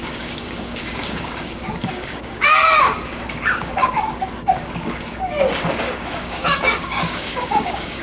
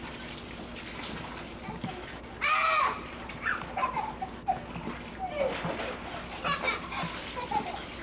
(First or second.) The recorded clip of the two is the second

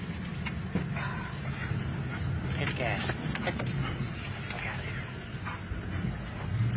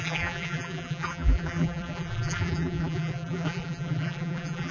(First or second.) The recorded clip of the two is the first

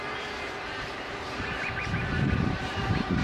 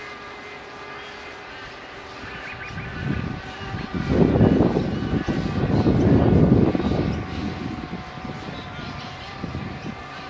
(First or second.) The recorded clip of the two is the second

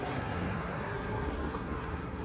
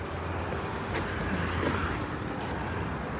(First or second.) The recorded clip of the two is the second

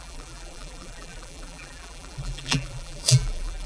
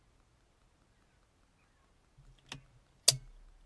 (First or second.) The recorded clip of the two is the second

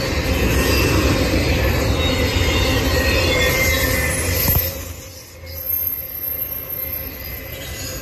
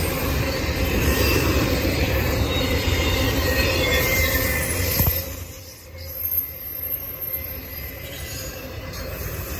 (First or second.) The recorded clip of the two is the first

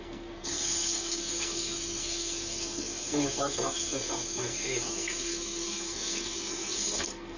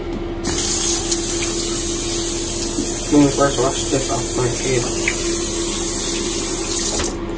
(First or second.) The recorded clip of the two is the second